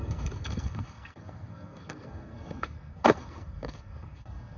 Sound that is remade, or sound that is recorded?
remade